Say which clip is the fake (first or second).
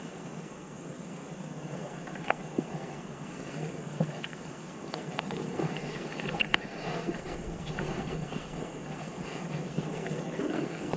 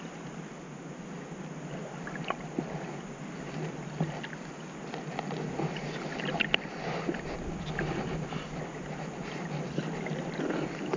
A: first